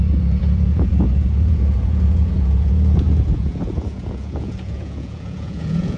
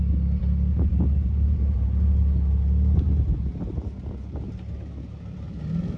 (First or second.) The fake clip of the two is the first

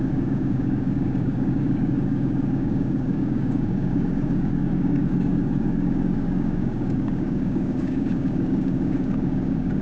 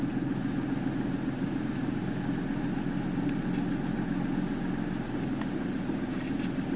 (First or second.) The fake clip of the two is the first